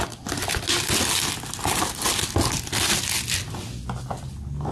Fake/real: real